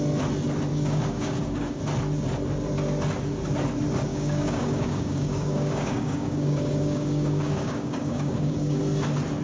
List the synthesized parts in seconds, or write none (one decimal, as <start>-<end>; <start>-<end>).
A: 0.7-1.8; 4.1-8.8